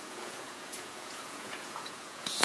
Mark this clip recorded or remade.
remade